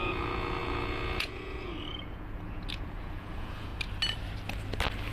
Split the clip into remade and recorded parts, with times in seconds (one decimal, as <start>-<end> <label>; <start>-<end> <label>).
0.0-3.7 remade; 3.7-5.1 recorded